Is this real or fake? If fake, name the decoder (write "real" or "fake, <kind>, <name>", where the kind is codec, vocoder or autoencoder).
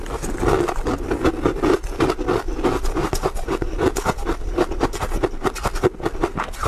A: real